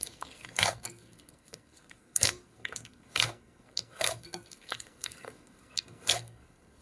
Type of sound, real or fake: fake